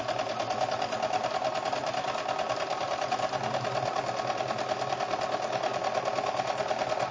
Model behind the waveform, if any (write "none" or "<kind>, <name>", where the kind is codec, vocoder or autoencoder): none